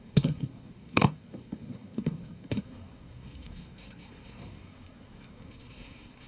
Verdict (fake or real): fake